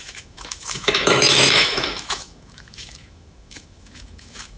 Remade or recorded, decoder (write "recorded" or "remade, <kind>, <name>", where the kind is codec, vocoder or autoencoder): remade, autoencoder, DAC-VAE